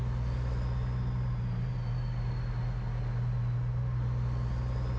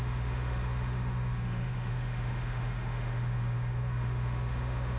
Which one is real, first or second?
first